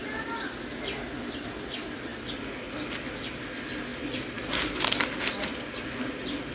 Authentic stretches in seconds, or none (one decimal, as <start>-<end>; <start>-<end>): 0.0-6.5